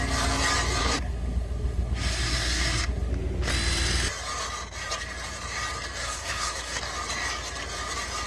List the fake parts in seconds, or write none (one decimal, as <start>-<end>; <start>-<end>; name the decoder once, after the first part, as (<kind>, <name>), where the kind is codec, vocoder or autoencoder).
0.8-3.1 (codec, SNAC); 6.0-6.8